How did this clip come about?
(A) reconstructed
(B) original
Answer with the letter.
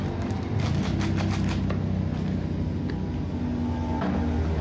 B